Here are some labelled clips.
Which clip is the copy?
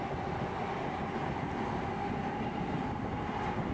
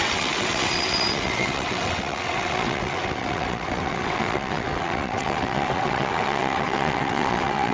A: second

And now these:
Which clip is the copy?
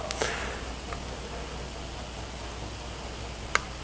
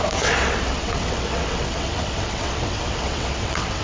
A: second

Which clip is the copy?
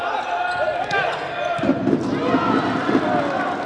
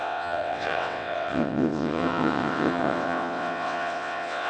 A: second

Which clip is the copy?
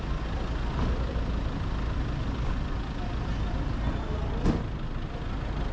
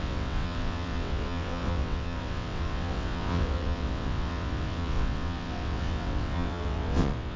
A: second